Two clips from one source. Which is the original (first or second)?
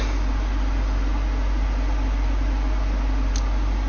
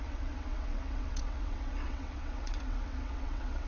first